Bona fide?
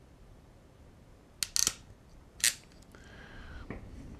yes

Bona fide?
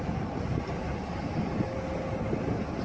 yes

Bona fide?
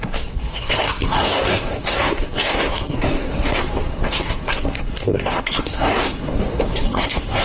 no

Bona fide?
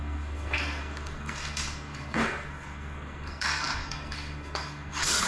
no